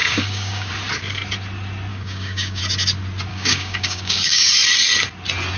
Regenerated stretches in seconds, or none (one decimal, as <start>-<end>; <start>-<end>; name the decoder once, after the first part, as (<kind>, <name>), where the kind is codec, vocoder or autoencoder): 0.0-0.7 (codec, DAC); 1.9-2.6; 3.3-4.5